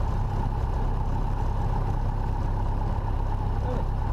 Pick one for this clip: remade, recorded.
recorded